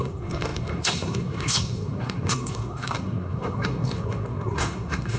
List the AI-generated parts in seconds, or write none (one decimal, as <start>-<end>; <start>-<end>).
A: 0.0-5.2